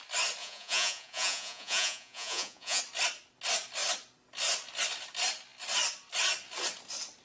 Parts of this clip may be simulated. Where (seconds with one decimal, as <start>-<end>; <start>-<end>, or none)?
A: 0.4-2.8